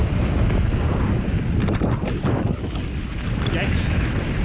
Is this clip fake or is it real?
real